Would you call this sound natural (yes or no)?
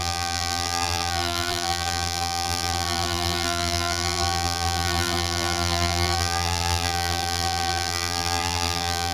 no